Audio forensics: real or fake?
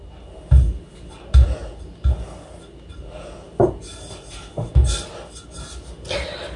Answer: real